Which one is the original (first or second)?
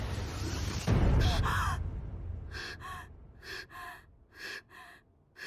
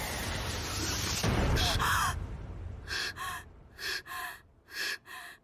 first